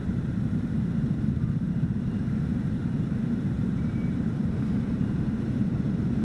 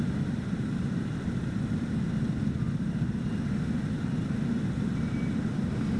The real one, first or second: second